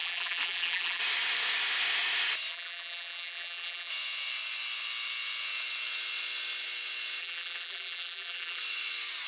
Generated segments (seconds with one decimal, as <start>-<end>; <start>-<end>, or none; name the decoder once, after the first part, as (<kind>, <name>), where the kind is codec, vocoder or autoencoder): 0.0-1.0 (vocoder, BigVGAN v2); 2.5-3.9; 7.2-8.6